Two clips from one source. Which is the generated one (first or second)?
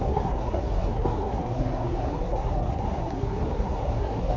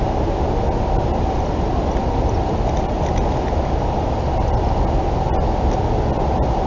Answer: first